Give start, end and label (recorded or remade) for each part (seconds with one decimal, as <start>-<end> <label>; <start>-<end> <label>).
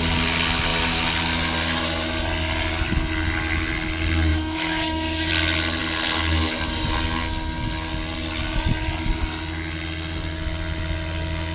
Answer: 0.0-4.3 recorded; 4.3-5.3 remade; 5.3-11.5 recorded